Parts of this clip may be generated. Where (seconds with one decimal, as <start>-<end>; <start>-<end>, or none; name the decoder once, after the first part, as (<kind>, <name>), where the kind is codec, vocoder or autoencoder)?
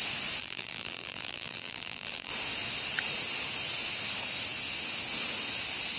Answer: 0.4-2.3 (vocoder, BigVGAN v2)